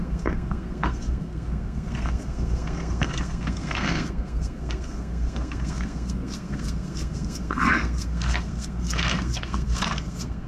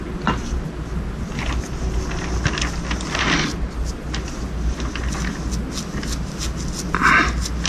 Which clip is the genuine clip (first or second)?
second